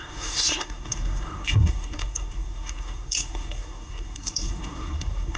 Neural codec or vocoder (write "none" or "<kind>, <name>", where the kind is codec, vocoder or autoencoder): codec, SNAC